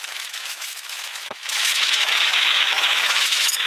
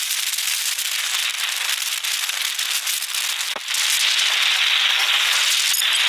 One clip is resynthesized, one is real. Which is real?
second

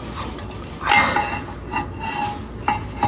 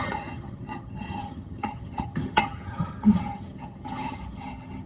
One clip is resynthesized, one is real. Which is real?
first